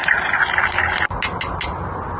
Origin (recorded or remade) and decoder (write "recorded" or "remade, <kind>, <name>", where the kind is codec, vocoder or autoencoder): recorded